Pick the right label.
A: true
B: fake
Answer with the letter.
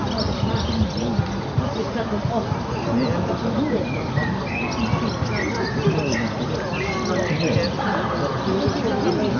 A